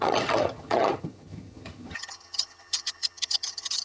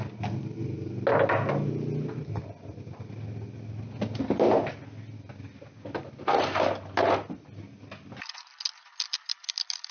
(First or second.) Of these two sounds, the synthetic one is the first